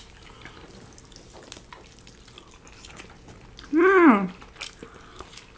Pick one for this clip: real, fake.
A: real